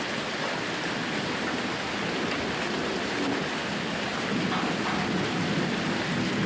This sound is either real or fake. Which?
real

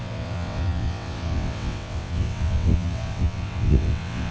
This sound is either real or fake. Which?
fake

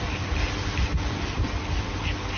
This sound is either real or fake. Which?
real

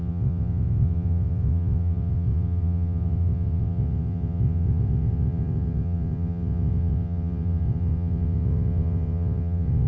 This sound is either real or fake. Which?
fake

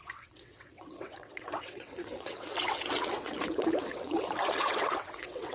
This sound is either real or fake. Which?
fake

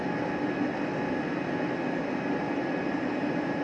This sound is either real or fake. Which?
real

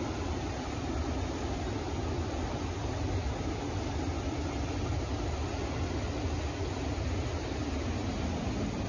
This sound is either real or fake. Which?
real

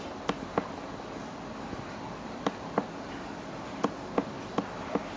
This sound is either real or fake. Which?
real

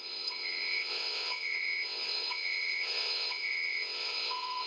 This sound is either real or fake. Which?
fake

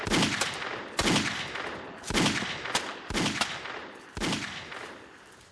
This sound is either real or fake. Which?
real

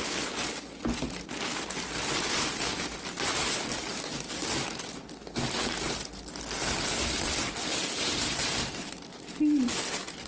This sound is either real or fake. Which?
real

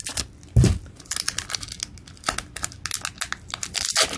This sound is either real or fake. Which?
real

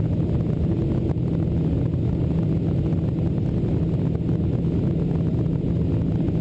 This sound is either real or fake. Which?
real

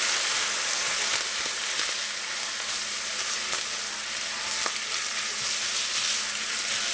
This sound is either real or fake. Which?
real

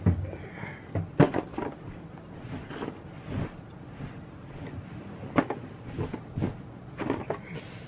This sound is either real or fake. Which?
real